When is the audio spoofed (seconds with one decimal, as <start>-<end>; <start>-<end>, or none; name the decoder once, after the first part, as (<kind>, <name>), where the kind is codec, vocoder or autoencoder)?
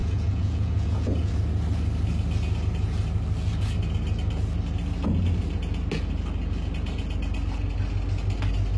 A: 0.0-1.3 (vocoder, Vocos)